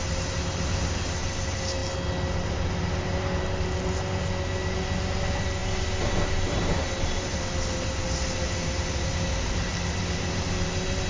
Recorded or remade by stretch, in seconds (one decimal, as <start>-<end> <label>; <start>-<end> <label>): 0.0-11.1 recorded